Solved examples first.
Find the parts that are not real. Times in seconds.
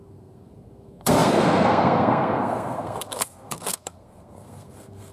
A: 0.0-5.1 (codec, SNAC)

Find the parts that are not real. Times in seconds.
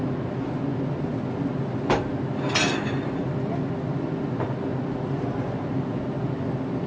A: none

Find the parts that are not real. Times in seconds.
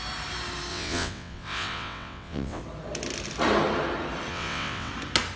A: 0.7-2.6 (vocoder, WaveNeXt); 4.3-4.9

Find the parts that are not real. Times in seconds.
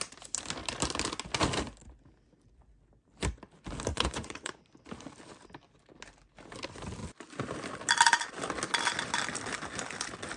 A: 3.9-4.6 (vocoder, Vocos)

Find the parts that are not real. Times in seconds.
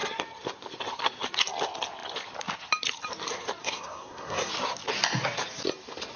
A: 3.6-4.5 (codec, SNAC)